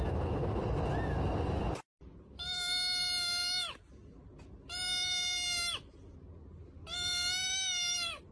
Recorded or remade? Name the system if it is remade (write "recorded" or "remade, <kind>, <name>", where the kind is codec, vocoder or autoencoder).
recorded